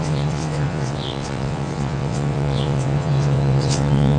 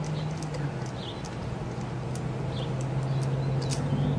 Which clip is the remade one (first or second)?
first